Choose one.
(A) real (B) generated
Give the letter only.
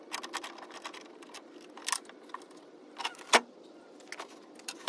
A